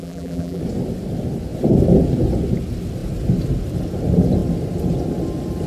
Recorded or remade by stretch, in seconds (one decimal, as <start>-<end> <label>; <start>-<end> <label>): 0.0-0.6 remade; 0.6-5.7 recorded